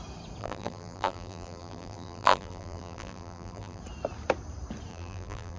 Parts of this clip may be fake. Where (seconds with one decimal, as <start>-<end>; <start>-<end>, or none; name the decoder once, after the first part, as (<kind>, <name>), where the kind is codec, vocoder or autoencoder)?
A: 0.4-3.8 (vocoder, BigVGAN v2); 4.9-5.6